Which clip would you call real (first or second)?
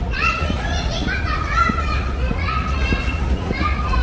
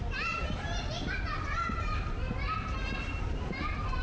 second